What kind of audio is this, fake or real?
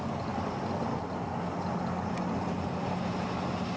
real